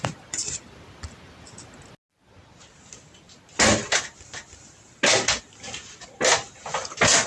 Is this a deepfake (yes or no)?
no